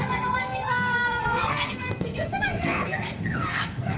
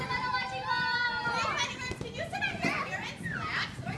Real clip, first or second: second